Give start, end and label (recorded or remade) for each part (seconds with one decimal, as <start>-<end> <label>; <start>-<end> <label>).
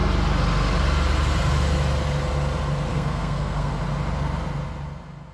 0.0-2.9 recorded; 2.9-3.7 remade; 3.7-5.3 recorded